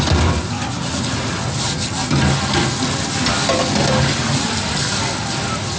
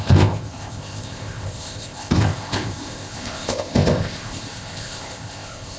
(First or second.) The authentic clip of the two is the first